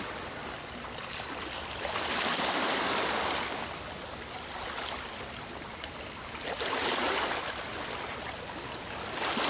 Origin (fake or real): real